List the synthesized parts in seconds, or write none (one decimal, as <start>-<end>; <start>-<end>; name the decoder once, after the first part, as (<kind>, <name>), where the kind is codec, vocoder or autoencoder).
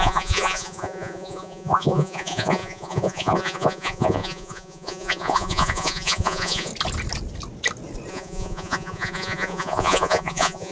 0.0-6.7 (vocoder, Vocos); 8.1-10.7